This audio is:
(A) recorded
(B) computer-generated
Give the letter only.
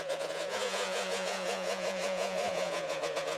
B